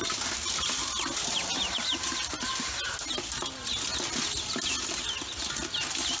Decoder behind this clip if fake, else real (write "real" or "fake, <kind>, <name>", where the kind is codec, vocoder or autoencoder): real